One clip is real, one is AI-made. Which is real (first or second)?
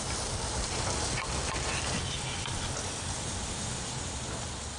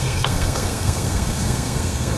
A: first